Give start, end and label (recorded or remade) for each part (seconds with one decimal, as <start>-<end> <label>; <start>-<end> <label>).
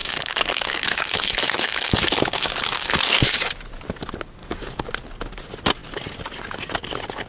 0.0-3.5 remade; 3.5-4.4 recorded; 4.4-4.9 remade; 4.9-7.3 recorded